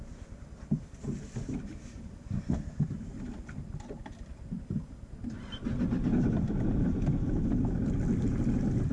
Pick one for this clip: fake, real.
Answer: real